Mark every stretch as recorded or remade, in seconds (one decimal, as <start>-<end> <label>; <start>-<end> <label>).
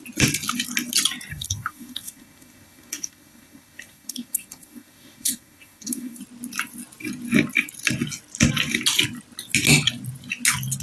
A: 0.0-1.3 recorded; 1.3-6.2 remade; 6.2-10.8 recorded